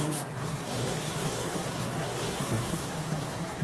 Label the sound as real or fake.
fake